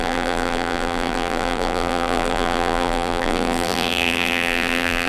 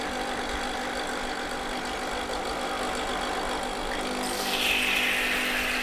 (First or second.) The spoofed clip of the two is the first